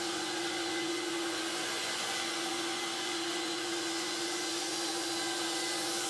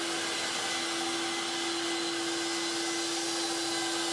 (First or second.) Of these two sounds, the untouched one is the second